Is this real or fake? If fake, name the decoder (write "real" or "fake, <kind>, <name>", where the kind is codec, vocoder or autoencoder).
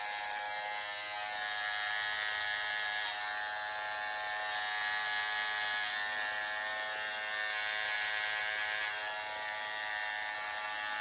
real